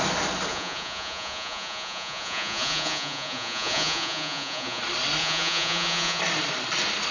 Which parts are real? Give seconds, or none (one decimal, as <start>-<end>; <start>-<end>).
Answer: 0.0-0.5; 4.8-5.2; 6.2-7.1